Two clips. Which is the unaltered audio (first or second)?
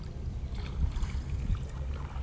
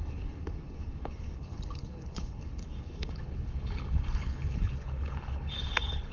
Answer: first